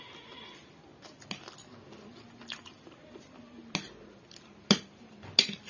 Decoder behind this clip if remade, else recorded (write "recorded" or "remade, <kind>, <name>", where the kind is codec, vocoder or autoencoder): recorded